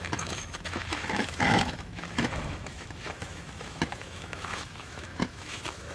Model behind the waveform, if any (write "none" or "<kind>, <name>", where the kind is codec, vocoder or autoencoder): autoencoder, DAC-VAE